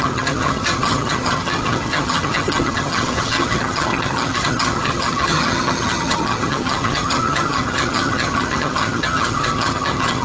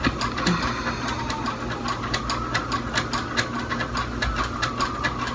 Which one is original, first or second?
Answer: second